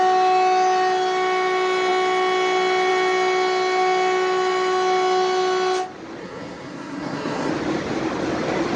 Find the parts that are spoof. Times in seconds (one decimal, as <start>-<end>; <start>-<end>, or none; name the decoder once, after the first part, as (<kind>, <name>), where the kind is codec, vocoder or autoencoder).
6.2-7.5 (codec, SNAC)